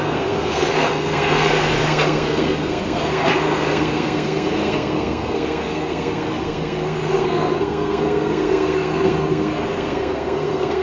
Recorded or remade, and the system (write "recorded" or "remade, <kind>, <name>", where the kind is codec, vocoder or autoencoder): remade, codec, SNAC